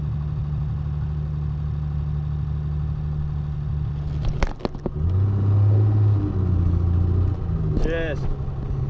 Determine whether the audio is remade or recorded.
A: recorded